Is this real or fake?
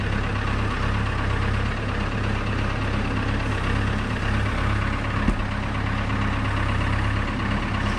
real